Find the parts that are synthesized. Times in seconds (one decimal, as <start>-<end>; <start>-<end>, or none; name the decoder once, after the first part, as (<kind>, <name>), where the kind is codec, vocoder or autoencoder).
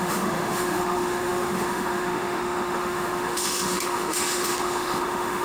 0.0-5.4 (autoencoder, DAC-VAE)